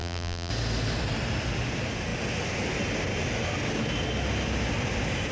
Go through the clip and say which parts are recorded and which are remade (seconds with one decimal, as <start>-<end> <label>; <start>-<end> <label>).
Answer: 0.0-0.5 remade; 0.5-5.3 recorded